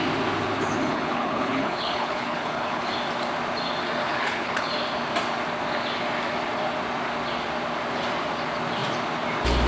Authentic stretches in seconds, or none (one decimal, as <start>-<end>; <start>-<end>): 0.0-0.5; 2.9-4.0; 4.7-9.7